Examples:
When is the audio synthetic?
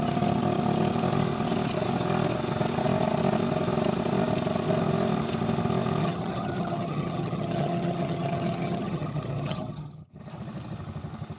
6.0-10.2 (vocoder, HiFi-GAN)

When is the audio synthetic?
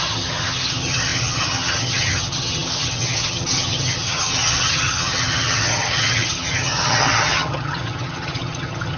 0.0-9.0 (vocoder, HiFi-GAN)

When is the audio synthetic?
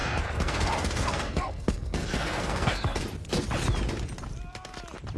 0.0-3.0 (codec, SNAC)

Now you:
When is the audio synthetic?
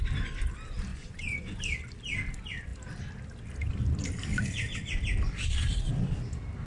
0.9-1.6 (vocoder, Vocos)